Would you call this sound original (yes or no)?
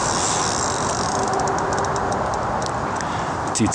yes